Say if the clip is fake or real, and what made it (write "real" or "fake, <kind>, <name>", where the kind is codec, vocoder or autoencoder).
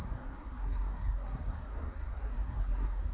fake, codec, SNAC